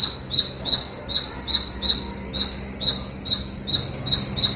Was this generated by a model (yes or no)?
no